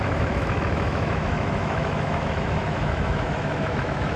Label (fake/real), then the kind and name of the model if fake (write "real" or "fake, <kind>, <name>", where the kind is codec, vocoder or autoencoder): fake, autoencoder, DAC-VAE